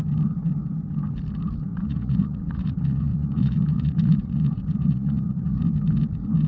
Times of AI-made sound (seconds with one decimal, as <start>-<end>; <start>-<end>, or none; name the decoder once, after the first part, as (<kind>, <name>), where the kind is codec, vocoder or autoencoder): 1.7-5.6 (vocoder, Vocos)

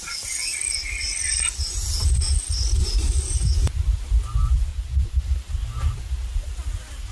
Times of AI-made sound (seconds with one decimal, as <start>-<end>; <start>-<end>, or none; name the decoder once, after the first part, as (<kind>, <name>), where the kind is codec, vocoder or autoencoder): 4.7-5.2 (vocoder, Vocos)